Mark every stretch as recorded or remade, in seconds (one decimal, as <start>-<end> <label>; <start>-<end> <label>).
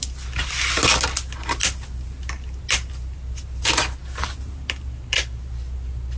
0.0-6.2 recorded